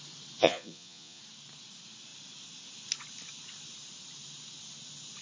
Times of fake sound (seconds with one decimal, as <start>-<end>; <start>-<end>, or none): 0.4-1.2